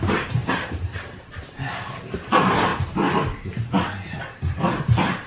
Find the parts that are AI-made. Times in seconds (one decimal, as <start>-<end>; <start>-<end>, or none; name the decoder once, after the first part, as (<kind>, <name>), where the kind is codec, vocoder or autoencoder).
0.0-2.7 (vocoder, BigVGAN v2)